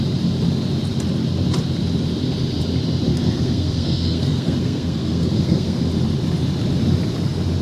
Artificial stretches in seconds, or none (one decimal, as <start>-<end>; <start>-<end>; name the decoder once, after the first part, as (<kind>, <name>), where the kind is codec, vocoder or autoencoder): 3.1-5.8 (codec, SNAC)